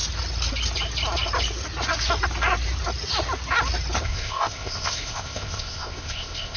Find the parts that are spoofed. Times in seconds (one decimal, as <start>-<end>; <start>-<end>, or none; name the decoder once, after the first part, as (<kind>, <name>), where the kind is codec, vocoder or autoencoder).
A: 4.0-6.6 (codec, ZipCodec)